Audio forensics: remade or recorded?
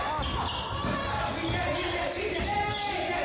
recorded